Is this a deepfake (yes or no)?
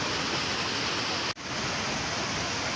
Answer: no